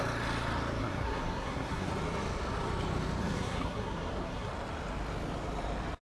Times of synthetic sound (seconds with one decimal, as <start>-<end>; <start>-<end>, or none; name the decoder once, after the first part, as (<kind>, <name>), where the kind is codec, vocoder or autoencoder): 0.8-1.9 (codec, SNAC); 3.2-4.5